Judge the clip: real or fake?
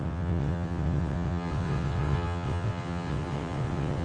fake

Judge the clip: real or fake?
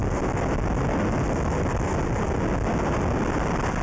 real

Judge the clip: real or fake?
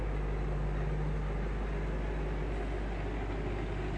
real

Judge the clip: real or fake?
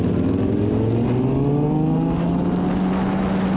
real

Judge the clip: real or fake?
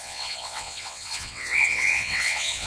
fake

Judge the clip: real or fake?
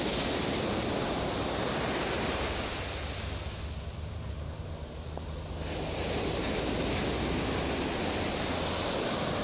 real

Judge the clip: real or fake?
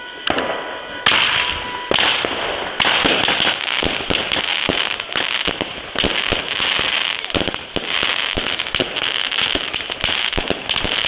real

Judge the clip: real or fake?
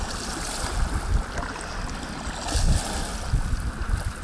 real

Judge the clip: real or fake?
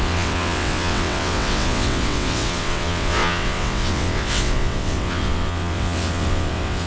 fake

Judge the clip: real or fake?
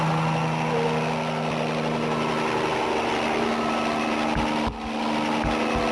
real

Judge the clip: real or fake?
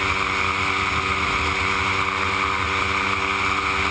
real